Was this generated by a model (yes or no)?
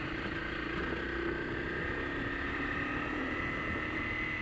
no